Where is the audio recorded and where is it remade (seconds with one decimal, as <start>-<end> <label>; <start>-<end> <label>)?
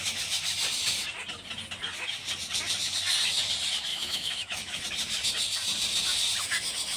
0.0-3.9 recorded; 3.9-4.8 remade; 4.8-7.0 recorded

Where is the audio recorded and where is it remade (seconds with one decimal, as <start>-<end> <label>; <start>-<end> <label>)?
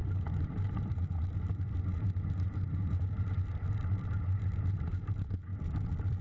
0.0-5.5 remade; 5.5-6.2 recorded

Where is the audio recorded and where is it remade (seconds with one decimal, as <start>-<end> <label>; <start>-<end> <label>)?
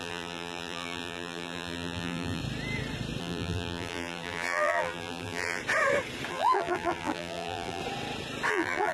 0.0-2.4 remade; 2.4-3.2 recorded; 3.2-5.6 remade; 5.6-6.3 recorded; 6.3-7.8 remade; 7.8-8.5 recorded; 8.5-8.9 remade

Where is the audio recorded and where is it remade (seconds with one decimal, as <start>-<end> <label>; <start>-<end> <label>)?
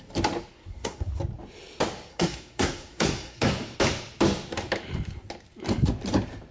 0.0-0.5 recorded; 0.5-1.2 remade; 1.2-2.1 recorded; 2.1-3.5 remade; 3.5-6.5 recorded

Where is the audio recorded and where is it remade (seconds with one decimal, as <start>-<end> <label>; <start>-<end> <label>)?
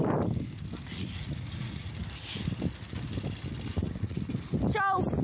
0.0-0.9 recorded; 0.9-1.9 remade; 1.9-3.8 recorded; 3.8-4.3 remade; 4.3-5.2 recorded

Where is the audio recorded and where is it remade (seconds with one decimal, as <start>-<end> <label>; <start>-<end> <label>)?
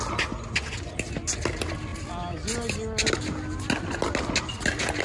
0.0-5.0 recorded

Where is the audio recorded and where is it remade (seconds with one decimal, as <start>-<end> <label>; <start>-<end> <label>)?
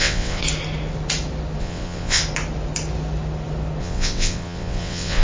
0.0-0.4 remade; 0.4-1.6 recorded; 1.6-2.2 remade; 2.2-3.8 recorded; 3.8-5.2 remade